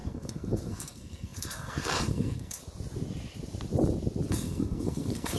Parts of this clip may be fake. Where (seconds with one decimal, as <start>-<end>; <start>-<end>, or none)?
0.0-2.6; 4.3-5.4